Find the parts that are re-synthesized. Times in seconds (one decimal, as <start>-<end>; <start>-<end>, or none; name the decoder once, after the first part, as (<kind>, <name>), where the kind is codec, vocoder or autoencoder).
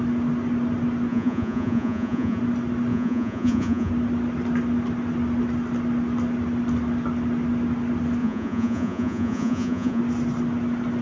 1.1-2.4 (vocoder, Vocos); 2.9-3.9; 8.2-10.0